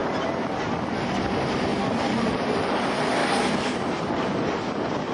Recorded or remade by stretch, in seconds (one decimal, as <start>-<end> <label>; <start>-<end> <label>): 0.0-1.7 recorded; 1.7-2.7 remade; 2.7-3.2 recorded; 3.2-4.0 remade; 4.0-5.1 recorded